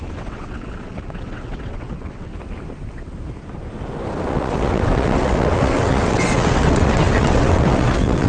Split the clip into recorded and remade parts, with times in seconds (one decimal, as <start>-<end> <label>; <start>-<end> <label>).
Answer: 0.0-2.3 remade; 2.3-4.3 recorded; 4.3-8.3 remade